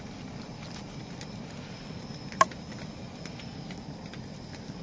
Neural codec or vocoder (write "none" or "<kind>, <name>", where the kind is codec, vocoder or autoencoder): none